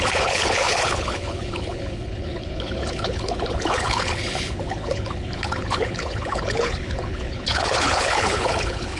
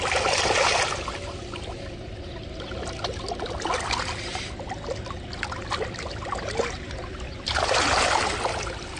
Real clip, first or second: second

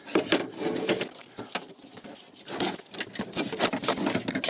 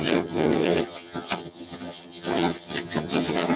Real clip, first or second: first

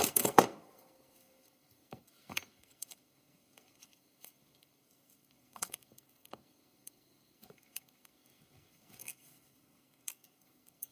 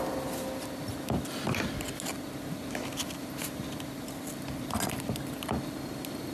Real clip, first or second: second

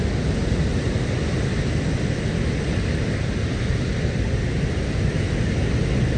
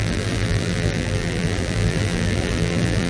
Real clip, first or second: first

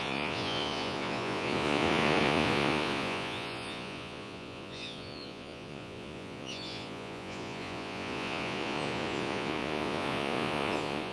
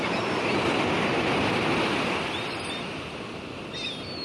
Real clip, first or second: second